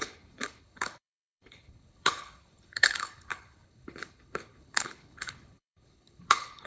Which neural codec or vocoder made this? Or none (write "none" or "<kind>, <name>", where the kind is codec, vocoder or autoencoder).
codec, HILCodec